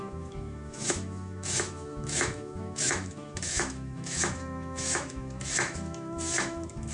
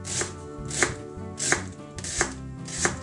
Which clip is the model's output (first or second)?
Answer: first